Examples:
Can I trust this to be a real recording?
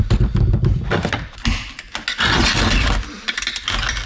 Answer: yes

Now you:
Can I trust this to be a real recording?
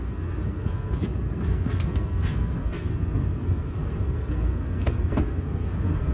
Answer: no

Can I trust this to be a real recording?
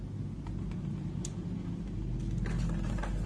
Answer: yes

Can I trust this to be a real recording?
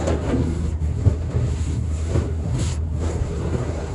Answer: no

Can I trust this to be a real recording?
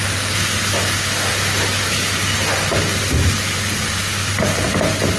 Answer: yes